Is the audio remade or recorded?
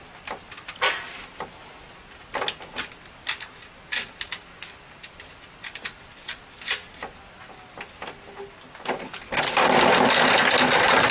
recorded